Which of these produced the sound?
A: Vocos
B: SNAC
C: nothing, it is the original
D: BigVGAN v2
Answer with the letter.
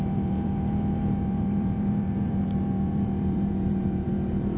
D